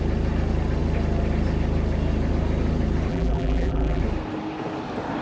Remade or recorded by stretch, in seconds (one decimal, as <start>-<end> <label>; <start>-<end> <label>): 0.0-3.1 recorded; 3.1-4.0 remade; 4.0-5.2 recorded